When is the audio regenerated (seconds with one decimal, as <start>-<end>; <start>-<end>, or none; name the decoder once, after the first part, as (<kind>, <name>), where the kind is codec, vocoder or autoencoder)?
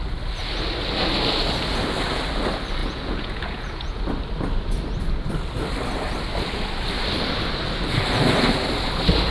2.8-4.0 (vocoder, Vocos)